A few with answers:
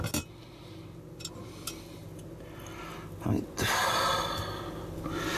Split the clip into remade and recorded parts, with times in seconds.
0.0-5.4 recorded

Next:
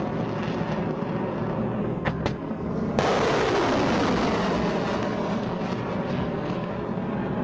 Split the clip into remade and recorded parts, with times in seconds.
0.0-1.8 recorded; 1.8-2.7 remade; 2.7-5.0 recorded; 5.0-5.6 remade; 5.6-6.1 recorded; 6.1-6.7 remade; 6.7-7.4 recorded

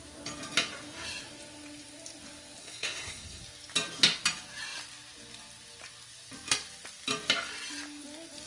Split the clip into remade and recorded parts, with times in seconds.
0.0-2.6 recorded; 2.6-3.4 remade; 3.4-8.5 recorded

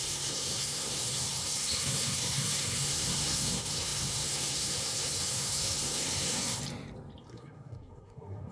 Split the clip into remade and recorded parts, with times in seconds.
0.0-6.6 remade; 6.6-7.3 recorded; 7.3-8.5 remade

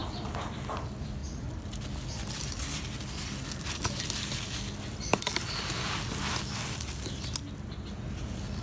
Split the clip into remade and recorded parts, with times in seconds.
0.0-8.6 recorded

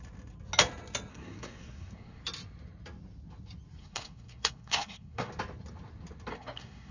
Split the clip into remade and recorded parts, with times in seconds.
0.0-1.1 recorded; 1.1-2.2 remade; 2.2-3.8 recorded; 3.8-5.3 remade; 5.3-6.3 recorded; 6.3-6.9 remade

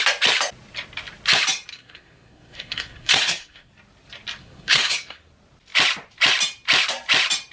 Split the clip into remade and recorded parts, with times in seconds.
0.0-1.7 recorded; 1.7-3.7 remade; 3.7-4.4 recorded; 4.4-5.3 remade; 5.3-7.5 recorded

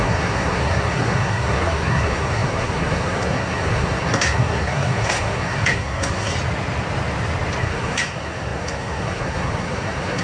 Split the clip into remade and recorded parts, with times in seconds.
0.0-6.3 remade; 6.3-7.6 recorded; 7.6-10.2 remade